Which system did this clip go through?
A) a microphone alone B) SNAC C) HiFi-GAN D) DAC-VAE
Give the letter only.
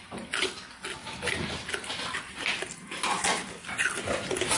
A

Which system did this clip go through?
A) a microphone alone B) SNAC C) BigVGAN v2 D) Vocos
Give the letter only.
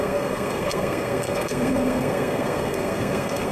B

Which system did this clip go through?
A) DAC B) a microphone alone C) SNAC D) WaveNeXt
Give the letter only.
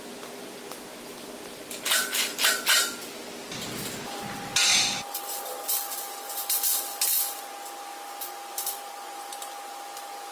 B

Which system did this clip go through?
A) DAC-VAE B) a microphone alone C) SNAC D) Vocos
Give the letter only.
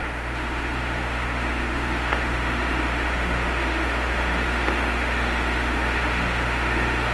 A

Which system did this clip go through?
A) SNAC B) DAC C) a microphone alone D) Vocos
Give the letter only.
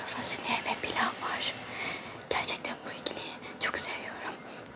C